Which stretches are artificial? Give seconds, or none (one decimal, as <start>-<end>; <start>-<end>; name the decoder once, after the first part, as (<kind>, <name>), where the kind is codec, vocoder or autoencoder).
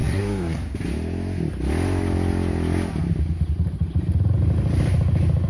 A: 0.0-0.6 (codec, SNAC)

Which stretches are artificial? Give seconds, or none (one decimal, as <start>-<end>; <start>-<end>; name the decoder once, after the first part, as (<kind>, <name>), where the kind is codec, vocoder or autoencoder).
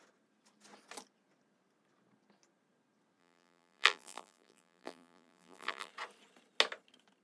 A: 3.2-5.9 (vocoder, BigVGAN v2)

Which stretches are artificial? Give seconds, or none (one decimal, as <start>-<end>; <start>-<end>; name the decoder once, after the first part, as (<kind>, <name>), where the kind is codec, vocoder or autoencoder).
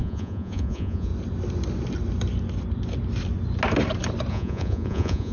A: 0.0-1.1 (vocoder, Vocos); 4.3-5.3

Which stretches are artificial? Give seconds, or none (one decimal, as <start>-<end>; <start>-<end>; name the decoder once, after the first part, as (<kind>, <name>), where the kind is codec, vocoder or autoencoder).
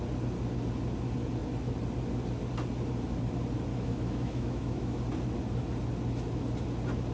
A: 3.7-5.0 (autoencoder, DAC-VAE)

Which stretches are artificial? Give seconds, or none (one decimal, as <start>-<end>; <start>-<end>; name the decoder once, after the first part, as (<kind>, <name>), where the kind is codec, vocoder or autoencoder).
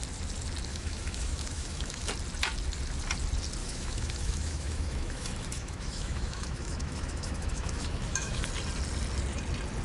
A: 0.7-2.1 (autoencoder, DAC-VAE); 3.6-8.5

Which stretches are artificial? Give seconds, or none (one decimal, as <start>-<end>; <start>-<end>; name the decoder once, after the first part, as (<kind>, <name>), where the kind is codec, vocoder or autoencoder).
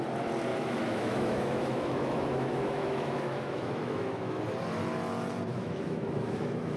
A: 0.5-4.4 (autoencoder, DAC-VAE); 5.5-6.8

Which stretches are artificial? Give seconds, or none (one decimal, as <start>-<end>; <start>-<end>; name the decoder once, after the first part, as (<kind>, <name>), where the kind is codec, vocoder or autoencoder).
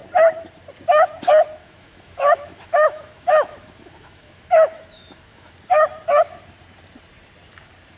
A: 1.6-5.5 (autoencoder, DAC-VAE)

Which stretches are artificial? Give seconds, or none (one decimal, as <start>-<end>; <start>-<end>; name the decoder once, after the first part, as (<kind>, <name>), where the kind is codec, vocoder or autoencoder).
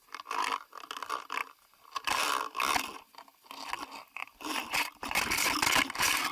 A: 1.4-2.1 (vocoder, BigVGAN v2); 4.2-5.6